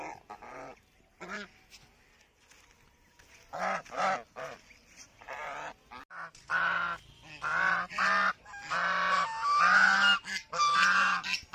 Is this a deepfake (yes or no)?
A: no